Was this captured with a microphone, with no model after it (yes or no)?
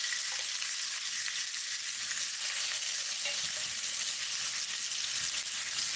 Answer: yes